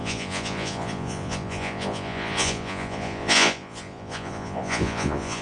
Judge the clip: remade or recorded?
remade